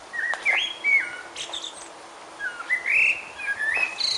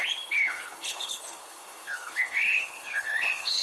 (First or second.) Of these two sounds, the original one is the first